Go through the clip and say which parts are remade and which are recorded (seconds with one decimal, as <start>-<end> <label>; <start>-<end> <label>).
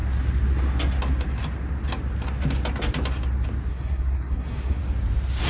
0.0-3.7 recorded; 3.7-4.8 remade; 4.8-5.5 recorded